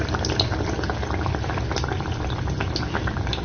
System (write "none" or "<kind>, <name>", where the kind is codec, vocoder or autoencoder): none